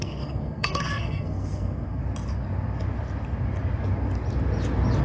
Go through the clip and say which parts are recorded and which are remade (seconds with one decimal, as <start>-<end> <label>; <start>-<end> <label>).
0.0-2.0 remade; 2.0-5.0 recorded